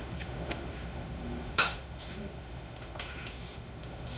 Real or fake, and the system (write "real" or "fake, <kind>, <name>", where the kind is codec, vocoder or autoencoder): fake, autoencoder, DAC-VAE